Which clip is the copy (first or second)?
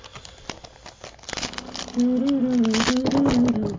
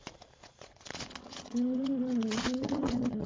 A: second